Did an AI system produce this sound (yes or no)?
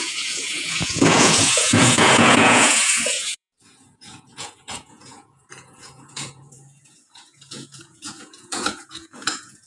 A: yes